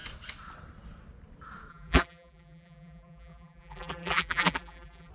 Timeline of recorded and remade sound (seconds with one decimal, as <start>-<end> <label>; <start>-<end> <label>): 0.0-1.7 recorded; 1.7-5.1 remade